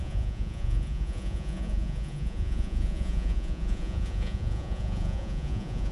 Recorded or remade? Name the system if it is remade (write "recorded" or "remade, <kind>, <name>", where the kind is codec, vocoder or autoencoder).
remade, vocoder, Vocos